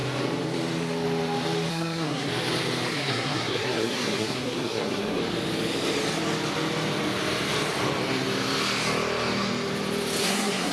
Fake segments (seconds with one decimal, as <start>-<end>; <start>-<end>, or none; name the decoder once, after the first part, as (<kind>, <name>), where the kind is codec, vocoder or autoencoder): 1.7-2.3 (codec, SNAC); 2.9-5.2; 10.2-10.7